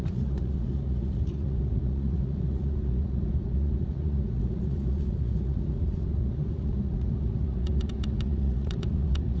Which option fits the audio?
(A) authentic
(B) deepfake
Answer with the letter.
B